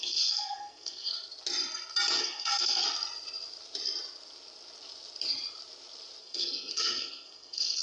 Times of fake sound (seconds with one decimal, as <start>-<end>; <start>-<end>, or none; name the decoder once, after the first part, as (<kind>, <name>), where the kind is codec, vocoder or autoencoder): 0.0-1.1 (codec, SNAC); 2.2-2.8; 6.2-7.8